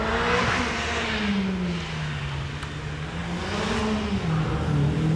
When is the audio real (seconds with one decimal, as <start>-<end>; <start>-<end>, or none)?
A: 0.0-5.2